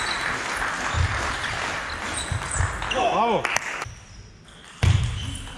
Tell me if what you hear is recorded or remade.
recorded